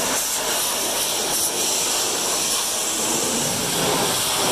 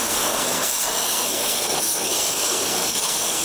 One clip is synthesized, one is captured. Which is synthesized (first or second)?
second